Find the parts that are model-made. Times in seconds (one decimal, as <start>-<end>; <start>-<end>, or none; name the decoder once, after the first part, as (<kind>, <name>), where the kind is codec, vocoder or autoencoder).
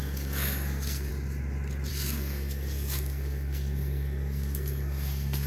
0.0-1.1 (codec, SNAC); 1.9-5.5